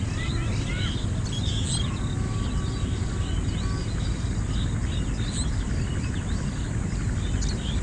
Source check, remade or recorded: recorded